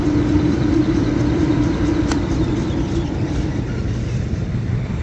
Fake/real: fake